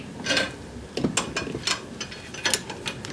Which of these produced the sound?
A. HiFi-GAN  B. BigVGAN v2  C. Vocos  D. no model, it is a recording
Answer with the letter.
D